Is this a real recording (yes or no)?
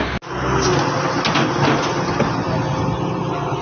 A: yes